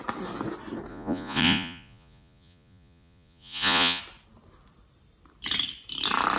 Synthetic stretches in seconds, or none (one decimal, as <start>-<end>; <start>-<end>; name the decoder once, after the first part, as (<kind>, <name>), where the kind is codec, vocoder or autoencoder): 0.9-4.0 (vocoder, Vocos)